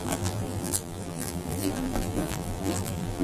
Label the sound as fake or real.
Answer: fake